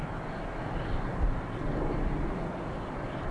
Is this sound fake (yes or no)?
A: no